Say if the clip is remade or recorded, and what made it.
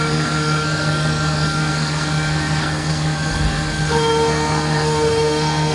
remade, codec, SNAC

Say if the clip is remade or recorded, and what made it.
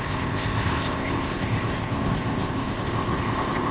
remade, codec, ZipCodec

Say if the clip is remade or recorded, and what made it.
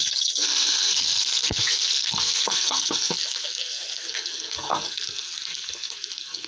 remade, codec, SNAC